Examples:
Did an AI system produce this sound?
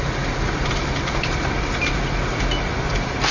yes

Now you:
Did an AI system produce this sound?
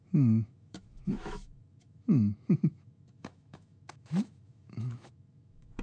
yes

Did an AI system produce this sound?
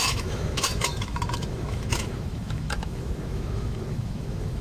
yes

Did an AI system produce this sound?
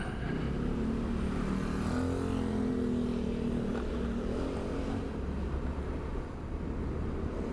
no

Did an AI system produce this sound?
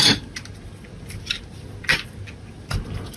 no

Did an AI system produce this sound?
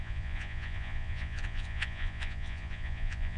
yes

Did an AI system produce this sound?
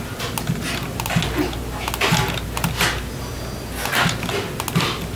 no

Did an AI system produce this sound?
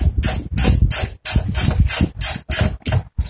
no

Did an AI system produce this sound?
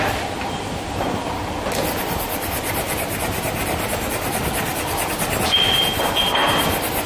no